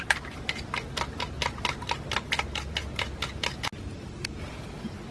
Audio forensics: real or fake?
real